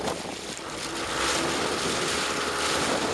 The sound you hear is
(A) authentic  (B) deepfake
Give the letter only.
A